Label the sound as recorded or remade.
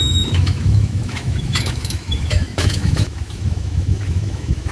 remade